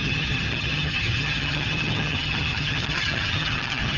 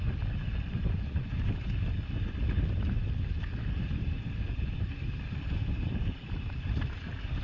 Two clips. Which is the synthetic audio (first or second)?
first